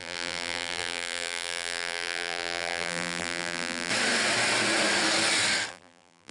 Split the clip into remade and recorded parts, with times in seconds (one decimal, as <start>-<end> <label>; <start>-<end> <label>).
0.0-3.9 remade; 3.9-5.7 recorded; 5.7-6.3 remade